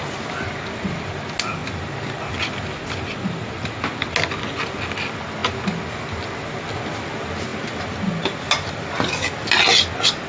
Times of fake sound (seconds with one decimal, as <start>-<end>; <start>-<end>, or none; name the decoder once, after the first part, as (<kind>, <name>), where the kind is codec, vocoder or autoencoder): none